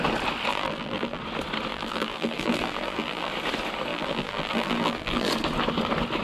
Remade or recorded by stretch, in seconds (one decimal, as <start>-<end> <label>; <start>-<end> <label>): 0.0-0.5 recorded; 0.5-1.2 remade; 1.2-1.7 recorded; 1.7-3.3 remade; 3.3-3.9 recorded; 3.9-5.3 remade; 5.3-6.2 recorded

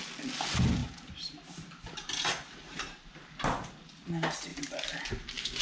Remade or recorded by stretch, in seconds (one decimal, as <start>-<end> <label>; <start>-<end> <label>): 0.0-0.8 recorded; 0.8-3.3 remade; 3.3-5.6 recorded

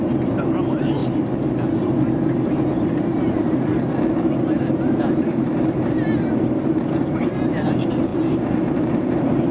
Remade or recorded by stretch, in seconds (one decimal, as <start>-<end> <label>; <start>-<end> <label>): 0.0-1.0 remade; 1.0-2.2 recorded; 2.2-3.7 remade; 3.7-4.6 recorded; 4.6-9.5 remade